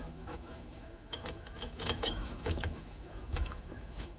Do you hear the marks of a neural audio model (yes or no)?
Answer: yes